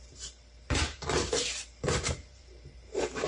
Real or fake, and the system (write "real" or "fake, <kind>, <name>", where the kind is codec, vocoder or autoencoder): fake, vocoder, BigVGAN v2